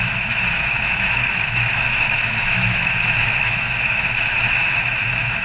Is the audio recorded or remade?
remade